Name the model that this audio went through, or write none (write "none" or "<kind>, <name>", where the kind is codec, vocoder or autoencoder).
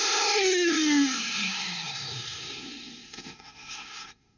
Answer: codec, SNAC